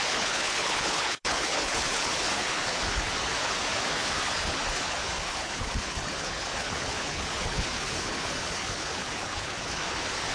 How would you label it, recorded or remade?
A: remade